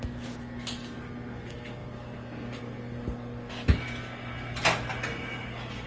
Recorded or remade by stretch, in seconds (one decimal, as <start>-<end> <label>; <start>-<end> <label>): 0.0-5.9 recorded